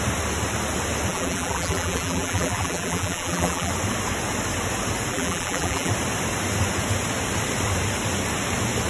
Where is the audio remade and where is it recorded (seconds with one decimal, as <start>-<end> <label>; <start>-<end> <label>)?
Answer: 0.0-1.1 recorded; 1.1-3.7 remade; 3.7-5.1 recorded; 5.1-5.9 remade; 5.9-8.9 recorded